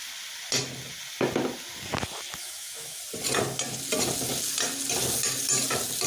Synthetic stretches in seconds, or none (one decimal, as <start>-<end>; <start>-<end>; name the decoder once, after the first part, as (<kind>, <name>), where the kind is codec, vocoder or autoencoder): 2.4-3.0 (autoencoder, DAC-VAE)